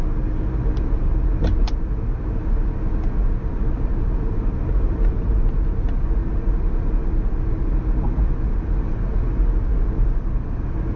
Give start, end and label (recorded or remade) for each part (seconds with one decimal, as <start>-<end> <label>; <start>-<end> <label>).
0.0-11.0 recorded